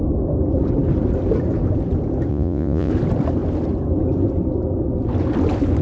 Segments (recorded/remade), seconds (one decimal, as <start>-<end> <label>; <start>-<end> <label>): 0.0-2.3 recorded; 2.3-2.9 remade; 2.9-5.8 recorded